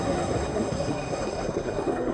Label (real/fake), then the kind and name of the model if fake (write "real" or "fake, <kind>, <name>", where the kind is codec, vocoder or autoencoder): fake, codec, SNAC